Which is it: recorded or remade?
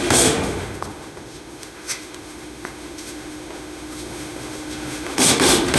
remade